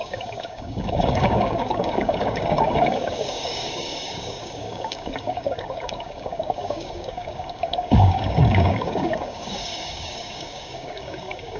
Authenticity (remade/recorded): remade